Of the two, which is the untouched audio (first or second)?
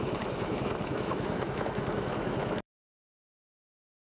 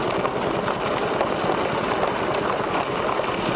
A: second